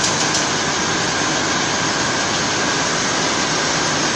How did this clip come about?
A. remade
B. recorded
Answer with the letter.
B